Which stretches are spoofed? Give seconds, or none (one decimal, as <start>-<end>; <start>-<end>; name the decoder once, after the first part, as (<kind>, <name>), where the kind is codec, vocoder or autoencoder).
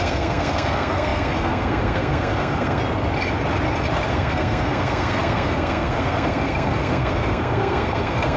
0.0-2.8 (codec, SNAC); 4.1-8.4